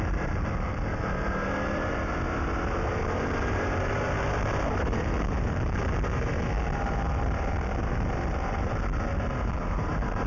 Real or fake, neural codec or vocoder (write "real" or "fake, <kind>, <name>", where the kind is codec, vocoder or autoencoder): fake, vocoder, BigVGAN v2